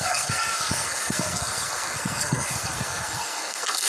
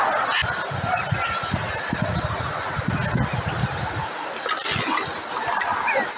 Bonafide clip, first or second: second